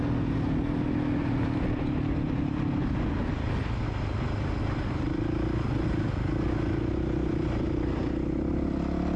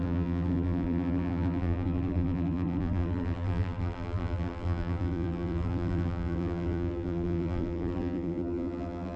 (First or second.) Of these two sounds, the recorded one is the first